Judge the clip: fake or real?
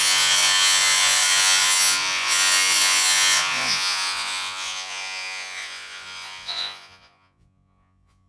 fake